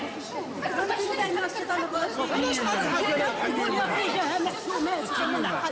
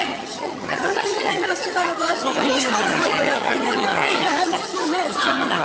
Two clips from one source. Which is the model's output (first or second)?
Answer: second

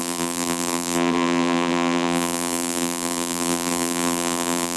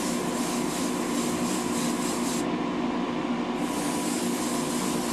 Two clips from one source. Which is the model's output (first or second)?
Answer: first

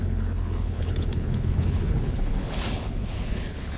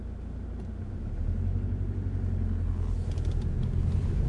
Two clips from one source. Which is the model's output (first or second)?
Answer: first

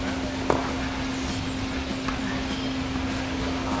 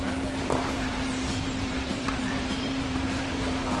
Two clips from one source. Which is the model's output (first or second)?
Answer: second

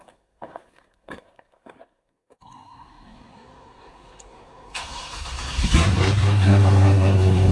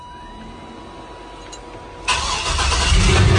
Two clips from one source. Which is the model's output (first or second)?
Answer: first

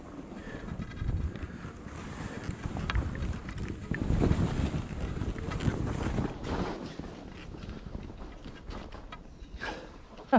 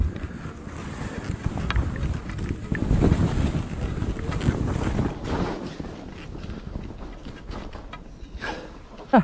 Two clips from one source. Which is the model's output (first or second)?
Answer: first